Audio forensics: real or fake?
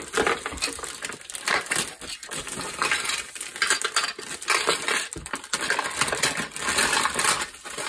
real